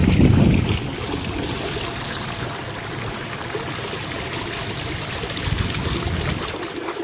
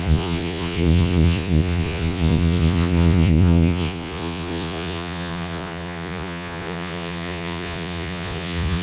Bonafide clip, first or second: first